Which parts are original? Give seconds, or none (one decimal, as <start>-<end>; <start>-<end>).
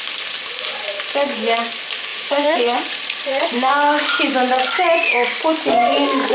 0.0-2.1; 3.7-6.3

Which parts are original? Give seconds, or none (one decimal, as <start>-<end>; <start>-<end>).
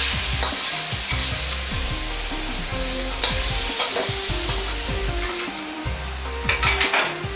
0.0-2.7; 5.8-7.4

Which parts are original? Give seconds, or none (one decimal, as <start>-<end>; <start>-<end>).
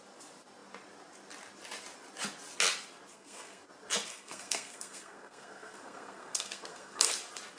0.0-3.1; 3.6-4.1; 7.1-7.6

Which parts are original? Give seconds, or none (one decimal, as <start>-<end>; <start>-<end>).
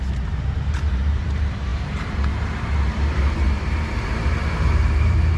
none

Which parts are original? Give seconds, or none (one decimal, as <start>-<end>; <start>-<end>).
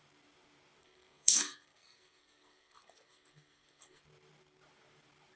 0.0-0.8; 4.0-5.4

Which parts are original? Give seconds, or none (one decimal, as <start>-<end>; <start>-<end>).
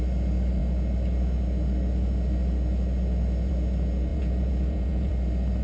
0.0-4.1; 5.1-5.6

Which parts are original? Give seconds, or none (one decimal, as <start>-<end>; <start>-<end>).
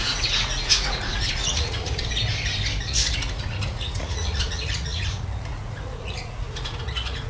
2.0-2.8